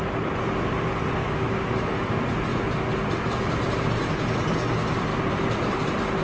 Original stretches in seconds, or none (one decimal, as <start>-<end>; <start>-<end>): 0.0-1.2; 2.1-6.2